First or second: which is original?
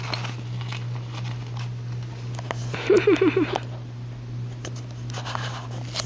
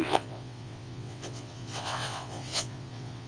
first